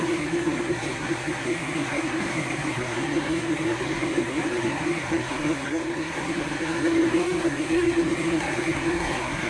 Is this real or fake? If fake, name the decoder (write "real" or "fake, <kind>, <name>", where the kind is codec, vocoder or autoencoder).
fake, codec, SNAC